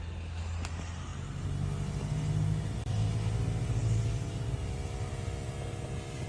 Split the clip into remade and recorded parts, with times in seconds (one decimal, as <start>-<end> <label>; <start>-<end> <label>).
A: 0.0-6.3 recorded